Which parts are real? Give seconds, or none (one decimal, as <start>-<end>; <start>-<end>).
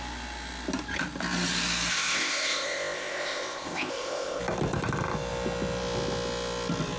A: 0.0-1.9; 4.4-7.0